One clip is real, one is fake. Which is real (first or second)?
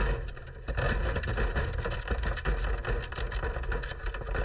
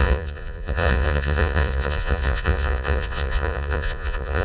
first